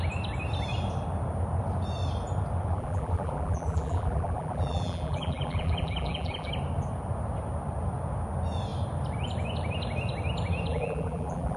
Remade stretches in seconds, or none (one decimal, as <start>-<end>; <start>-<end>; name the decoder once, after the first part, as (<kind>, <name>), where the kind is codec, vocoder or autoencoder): 2.7-6.5 (vocoder, BigVGAN v2); 10.7-11.6